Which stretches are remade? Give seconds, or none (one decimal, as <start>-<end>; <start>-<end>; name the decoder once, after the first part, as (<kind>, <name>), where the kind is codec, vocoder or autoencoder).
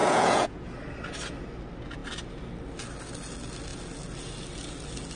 0.0-0.7 (vocoder, Vocos)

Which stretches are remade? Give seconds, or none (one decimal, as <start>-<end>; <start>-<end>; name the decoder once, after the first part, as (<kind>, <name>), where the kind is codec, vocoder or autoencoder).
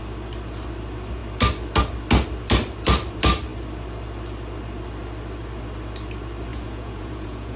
6.5-7.6 (vocoder, Vocos)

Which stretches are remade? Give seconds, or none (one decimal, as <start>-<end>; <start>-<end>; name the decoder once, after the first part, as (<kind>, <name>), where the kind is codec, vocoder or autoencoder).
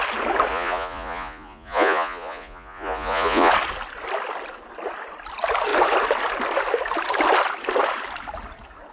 0.5-3.5 (vocoder, Vocos)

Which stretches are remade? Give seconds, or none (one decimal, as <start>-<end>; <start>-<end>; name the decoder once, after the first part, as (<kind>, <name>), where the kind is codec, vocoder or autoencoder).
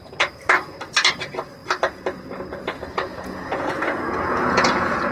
3.1-5.1 (vocoder, Vocos)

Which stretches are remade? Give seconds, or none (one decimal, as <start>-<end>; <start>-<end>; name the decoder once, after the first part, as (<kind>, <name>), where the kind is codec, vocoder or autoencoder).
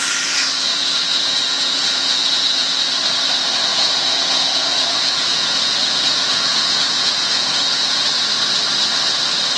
0.7-2.8 (vocoder, Vocos); 3.7-8.0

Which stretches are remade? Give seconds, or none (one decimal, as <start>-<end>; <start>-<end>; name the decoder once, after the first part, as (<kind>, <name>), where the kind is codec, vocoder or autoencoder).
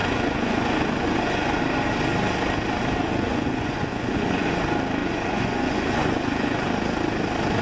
0.0-1.6 (vocoder, Vocos); 3.0-4.6; 5.0-6.7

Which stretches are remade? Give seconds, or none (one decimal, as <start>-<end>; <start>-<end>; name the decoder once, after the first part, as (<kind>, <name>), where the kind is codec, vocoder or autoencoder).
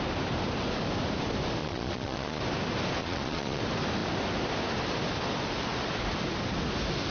1.6-2.4 (vocoder, Vocos); 3.0-3.6